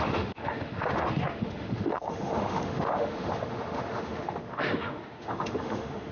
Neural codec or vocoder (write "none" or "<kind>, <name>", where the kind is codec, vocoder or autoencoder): autoencoder, DAC-VAE